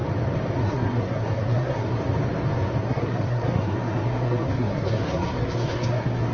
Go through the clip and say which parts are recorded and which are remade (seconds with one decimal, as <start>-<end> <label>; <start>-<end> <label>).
0.0-0.6 recorded; 0.6-2.0 remade; 2.0-2.8 recorded; 2.8-6.3 remade